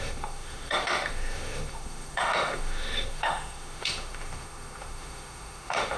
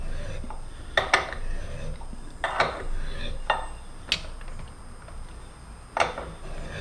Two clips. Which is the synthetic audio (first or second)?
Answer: first